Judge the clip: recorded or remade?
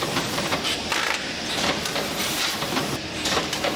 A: remade